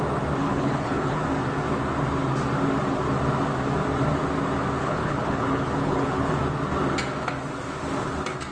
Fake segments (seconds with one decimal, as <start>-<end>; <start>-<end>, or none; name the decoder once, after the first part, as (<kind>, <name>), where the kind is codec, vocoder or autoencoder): 0.4-1.2 (codec, HILCodec); 4.8-6.3

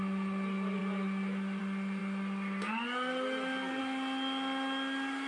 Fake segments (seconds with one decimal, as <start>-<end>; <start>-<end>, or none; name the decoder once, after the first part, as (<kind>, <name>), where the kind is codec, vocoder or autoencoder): none

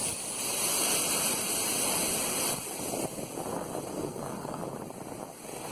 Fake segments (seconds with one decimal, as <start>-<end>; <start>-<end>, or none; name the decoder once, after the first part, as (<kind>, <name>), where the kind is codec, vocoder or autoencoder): 3.9-4.6 (codec, SNAC)

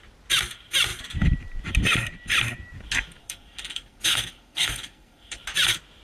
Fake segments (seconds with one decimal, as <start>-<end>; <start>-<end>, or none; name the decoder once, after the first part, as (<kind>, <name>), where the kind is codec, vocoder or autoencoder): 3.2-5.4 (codec, SNAC)

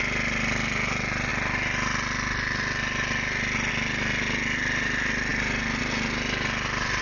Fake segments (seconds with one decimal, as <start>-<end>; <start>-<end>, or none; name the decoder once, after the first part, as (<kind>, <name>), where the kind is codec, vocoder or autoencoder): none

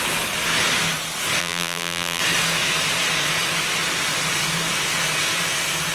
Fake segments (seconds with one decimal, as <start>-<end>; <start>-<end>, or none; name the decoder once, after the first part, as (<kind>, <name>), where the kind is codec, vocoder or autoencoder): 1.4-2.2 (vocoder, BigVGAN v2)